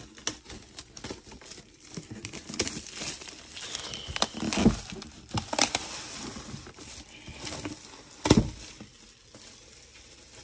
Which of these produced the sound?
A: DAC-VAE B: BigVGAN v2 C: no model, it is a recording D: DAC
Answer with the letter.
C